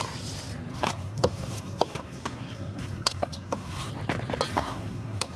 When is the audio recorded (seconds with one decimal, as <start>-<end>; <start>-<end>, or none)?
0.0-0.7; 3.9-4.5